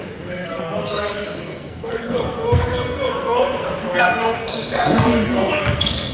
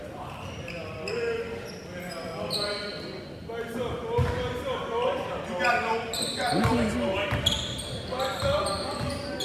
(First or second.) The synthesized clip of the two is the first